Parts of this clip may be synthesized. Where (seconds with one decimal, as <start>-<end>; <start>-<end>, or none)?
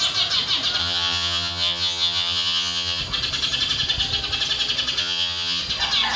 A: 0.8-3.0; 5.0-5.6